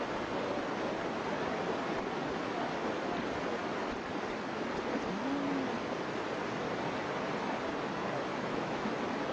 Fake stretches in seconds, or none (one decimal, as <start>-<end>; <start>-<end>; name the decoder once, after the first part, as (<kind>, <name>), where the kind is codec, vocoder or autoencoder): 8.3-8.9 (autoencoder, DAC-VAE)